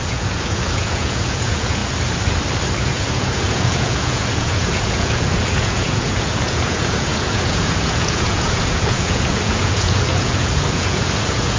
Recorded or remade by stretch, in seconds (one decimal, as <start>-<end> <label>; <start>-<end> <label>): 0.0-1.8 remade; 1.8-2.8 recorded; 2.8-11.6 remade